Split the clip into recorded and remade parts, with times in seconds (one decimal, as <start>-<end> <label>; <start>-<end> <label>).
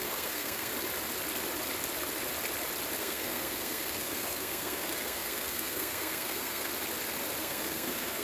0.0-0.7 remade; 0.7-3.0 recorded; 3.0-6.7 remade; 6.7-7.4 recorded; 7.4-8.2 remade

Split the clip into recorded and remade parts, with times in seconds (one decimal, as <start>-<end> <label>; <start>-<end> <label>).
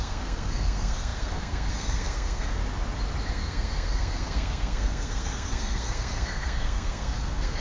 0.0-2.6 remade; 2.6-3.3 recorded; 3.3-7.6 remade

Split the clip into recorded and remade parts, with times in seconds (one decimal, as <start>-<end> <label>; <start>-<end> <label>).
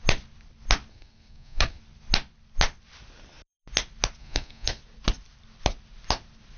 0.0-0.9 recorded; 0.9-1.8 remade; 1.8-4.2 recorded; 4.2-4.8 remade; 4.8-6.6 recorded